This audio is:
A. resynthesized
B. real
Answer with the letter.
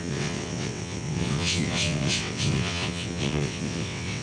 A